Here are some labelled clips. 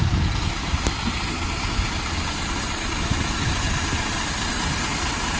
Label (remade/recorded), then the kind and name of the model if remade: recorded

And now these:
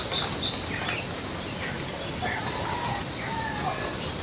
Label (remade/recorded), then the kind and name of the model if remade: recorded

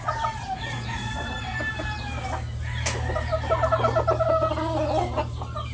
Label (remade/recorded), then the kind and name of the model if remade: recorded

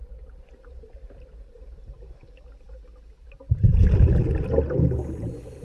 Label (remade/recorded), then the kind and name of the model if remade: recorded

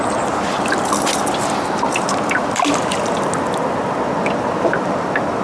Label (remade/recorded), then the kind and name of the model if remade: recorded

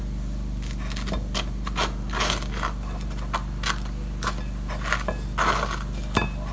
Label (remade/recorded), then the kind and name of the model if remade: recorded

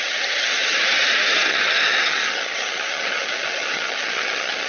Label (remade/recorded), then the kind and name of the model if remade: remade, vocoder, HiFi-GAN